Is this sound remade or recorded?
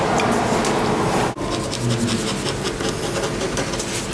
recorded